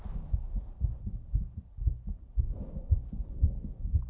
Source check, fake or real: real